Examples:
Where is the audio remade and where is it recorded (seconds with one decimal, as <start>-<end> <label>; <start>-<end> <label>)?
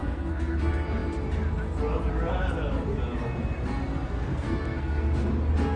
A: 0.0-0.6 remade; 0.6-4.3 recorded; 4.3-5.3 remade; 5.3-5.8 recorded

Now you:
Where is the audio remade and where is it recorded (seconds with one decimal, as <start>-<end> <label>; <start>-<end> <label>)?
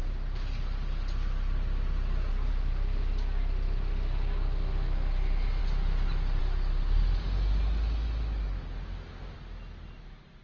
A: 0.0-10.4 recorded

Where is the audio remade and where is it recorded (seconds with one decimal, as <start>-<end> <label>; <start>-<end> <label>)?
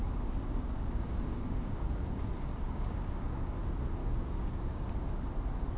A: 0.0-3.5 remade; 3.5-4.0 recorded; 4.0-4.9 remade; 4.9-5.8 recorded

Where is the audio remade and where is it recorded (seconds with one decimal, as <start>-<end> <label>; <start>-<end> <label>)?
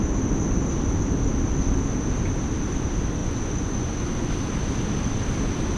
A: 0.0-3.2 recorded; 3.2-4.3 remade; 4.3-5.8 recorded